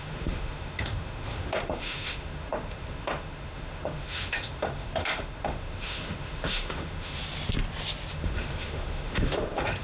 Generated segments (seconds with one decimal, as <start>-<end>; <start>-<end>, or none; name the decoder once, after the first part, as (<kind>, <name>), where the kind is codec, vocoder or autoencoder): 0.0-7.2 (autoencoder, DAC-VAE); 8.1-9.8